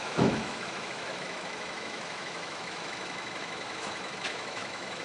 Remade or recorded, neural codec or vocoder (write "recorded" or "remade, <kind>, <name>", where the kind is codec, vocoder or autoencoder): remade, autoencoder, DAC-VAE